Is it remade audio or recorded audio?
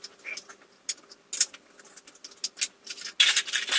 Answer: recorded